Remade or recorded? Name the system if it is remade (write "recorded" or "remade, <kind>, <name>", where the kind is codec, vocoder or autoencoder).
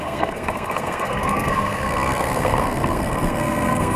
remade, codec, SNAC